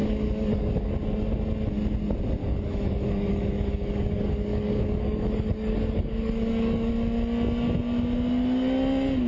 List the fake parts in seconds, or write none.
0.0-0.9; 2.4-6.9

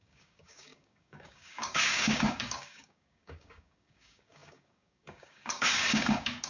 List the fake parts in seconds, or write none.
0.0-6.5

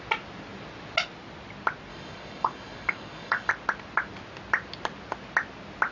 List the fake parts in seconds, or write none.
1.9-3.5

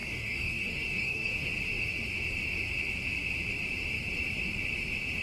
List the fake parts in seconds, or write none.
0.0-1.5